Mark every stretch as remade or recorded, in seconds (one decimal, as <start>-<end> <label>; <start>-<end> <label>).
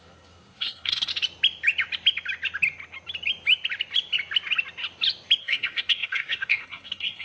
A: 0.0-1.1 remade; 1.1-5.4 recorded; 5.4-7.2 remade